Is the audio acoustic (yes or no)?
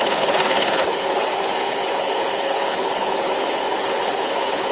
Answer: no